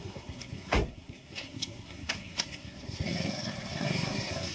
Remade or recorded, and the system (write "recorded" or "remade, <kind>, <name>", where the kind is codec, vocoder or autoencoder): remade, codec, SNAC